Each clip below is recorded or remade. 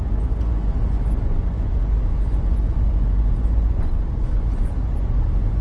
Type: remade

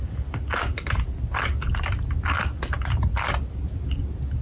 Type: recorded